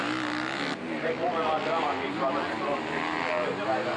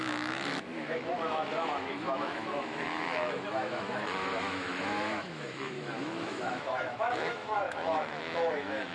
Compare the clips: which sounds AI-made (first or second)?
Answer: second